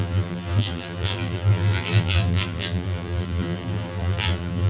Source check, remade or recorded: remade